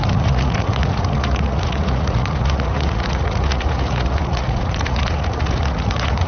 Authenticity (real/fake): fake